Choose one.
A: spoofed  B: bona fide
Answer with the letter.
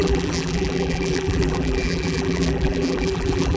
A